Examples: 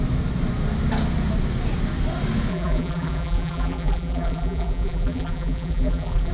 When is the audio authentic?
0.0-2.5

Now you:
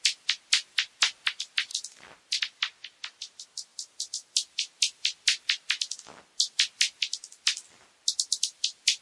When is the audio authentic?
0.0-1.7; 2.4-9.0